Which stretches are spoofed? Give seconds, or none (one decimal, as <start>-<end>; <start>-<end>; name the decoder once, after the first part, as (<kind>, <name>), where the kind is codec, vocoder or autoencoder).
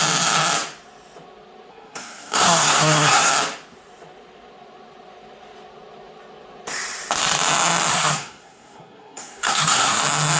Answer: 1.7-3.3 (codec, SNAC); 7.9-10.0